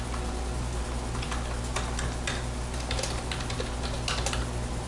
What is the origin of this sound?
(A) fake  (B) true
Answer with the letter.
B